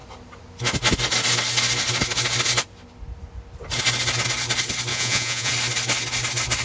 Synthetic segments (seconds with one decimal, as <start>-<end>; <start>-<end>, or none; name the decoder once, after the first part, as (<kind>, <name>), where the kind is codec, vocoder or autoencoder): 4.9-5.5 (vocoder, Vocos)